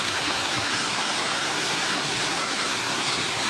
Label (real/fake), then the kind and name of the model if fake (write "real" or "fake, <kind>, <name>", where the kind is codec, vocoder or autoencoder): fake, codec, SNAC